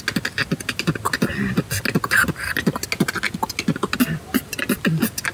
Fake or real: real